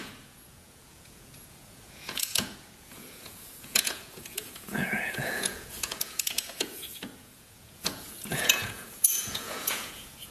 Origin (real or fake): fake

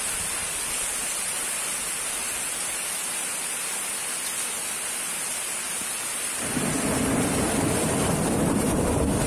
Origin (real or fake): real